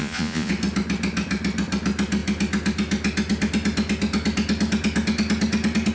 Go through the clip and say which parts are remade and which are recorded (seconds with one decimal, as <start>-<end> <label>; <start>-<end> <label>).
0.0-0.5 remade; 0.5-5.9 recorded